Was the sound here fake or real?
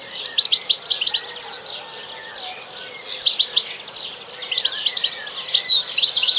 real